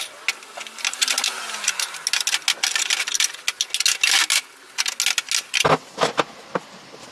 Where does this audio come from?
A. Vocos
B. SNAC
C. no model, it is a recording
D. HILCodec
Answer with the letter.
C